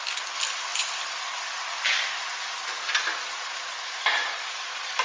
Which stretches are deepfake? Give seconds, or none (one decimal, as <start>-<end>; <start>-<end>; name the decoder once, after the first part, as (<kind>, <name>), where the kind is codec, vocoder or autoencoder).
none